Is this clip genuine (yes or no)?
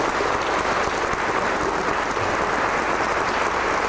yes